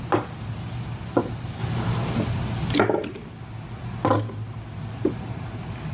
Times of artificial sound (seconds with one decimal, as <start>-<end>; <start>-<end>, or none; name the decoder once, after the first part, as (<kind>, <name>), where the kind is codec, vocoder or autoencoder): none